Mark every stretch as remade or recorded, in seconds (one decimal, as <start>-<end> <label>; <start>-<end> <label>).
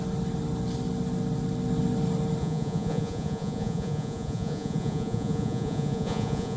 0.0-2.4 recorded; 2.4-6.6 remade